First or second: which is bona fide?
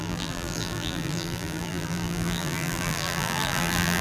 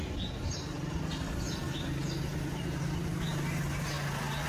second